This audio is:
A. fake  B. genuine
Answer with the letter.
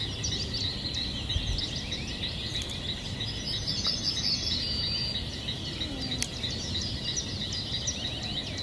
B